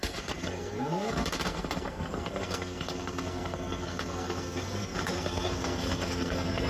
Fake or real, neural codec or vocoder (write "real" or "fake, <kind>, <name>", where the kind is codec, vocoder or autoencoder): fake, codec, SNAC